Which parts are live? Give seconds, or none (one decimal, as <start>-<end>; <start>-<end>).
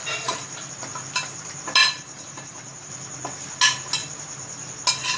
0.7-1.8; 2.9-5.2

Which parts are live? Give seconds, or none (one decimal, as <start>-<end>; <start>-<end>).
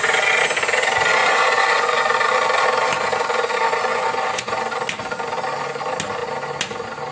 0.0-1.2; 2.0-3.9; 4.6-7.1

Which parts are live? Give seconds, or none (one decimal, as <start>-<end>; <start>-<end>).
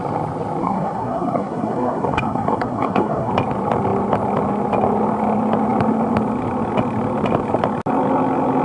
0.0-0.6; 3.3-8.6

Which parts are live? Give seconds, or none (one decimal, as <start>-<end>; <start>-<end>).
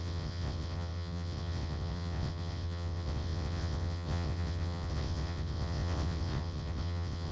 none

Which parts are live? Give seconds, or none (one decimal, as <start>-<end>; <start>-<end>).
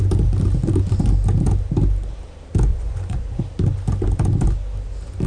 0.0-2.7; 3.4-5.3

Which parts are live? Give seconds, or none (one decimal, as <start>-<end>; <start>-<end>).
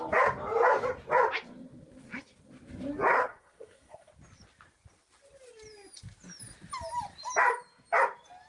0.0-3.1; 4.1-8.5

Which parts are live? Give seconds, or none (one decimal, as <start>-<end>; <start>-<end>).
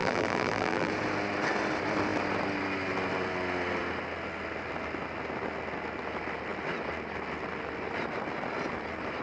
0.9-9.2